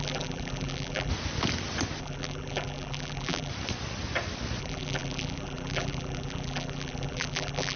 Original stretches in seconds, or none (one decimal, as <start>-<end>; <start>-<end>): 1.1-2.0; 3.5-4.6